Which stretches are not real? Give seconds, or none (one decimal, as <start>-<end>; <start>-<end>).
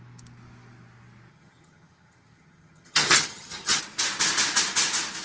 1.3-3.8